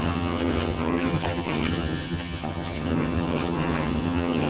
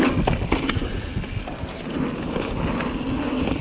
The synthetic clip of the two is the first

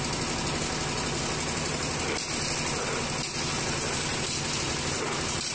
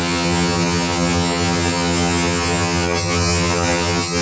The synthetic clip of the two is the second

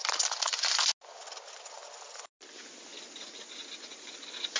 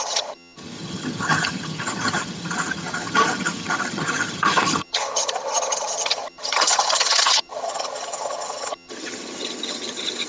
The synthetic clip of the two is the second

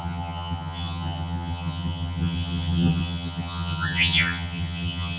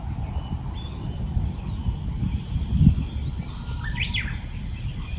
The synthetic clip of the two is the first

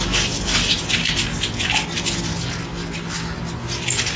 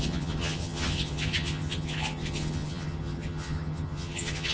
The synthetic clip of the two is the second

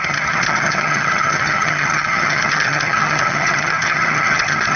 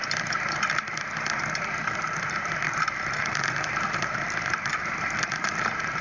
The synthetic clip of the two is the first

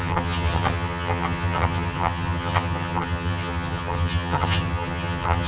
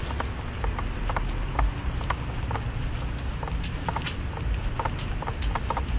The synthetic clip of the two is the first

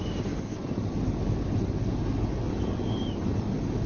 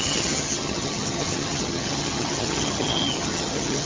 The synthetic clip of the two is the second